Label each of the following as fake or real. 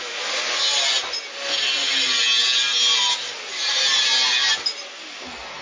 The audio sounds real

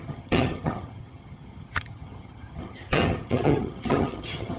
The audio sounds fake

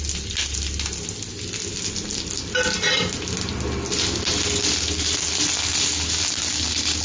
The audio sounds real